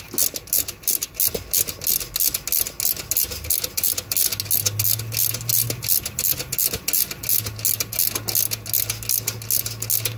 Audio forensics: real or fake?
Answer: real